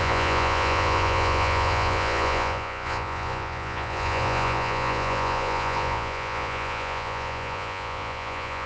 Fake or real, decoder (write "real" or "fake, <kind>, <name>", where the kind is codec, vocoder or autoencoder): fake, vocoder, Vocos